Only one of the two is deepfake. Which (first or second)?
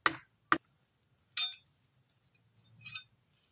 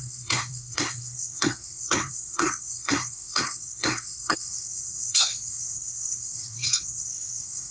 second